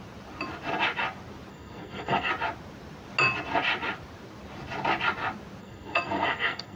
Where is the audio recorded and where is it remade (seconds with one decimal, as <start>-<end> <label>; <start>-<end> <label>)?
0.0-1.5 recorded; 1.5-2.3 remade; 2.3-5.6 recorded; 5.6-6.8 remade